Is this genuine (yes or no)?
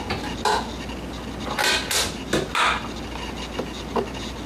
yes